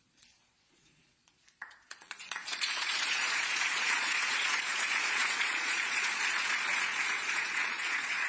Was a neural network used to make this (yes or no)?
yes